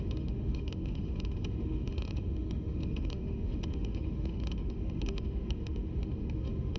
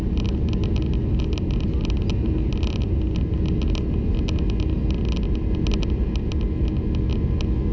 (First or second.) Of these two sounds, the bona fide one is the second